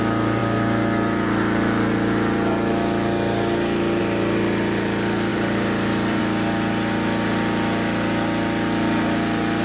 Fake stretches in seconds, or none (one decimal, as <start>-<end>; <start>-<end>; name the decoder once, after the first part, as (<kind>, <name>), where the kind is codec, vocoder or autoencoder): 5.3-6.2 (vocoder, BigVGAN v2)